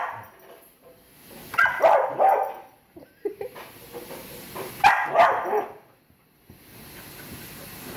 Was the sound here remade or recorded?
recorded